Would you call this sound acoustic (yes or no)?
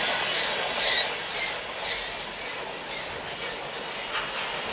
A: yes